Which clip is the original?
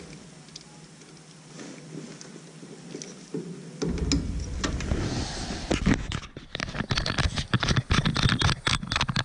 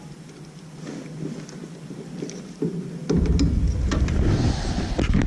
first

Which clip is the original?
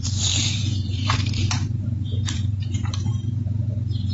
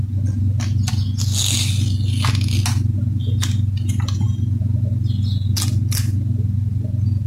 second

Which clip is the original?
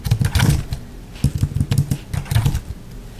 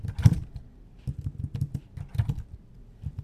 first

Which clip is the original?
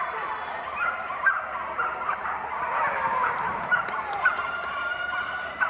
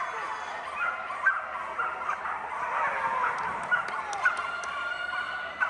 second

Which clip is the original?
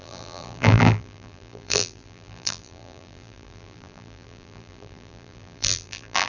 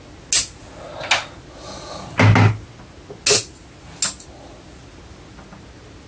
second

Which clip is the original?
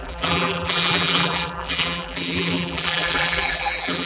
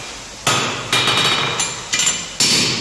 second